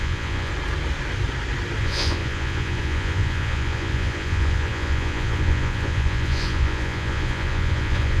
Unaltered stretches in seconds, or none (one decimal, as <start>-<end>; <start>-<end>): 0.5-1.8